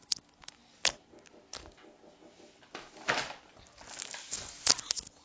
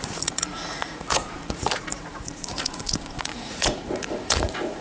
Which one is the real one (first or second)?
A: first